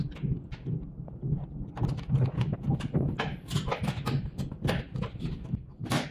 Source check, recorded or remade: recorded